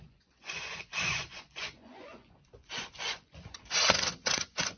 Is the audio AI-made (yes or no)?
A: yes